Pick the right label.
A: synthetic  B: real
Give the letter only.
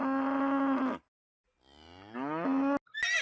B